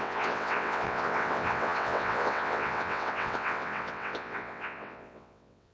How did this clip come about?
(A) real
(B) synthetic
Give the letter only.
B